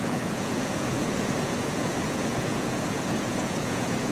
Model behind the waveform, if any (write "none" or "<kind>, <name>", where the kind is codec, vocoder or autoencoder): vocoder, Vocos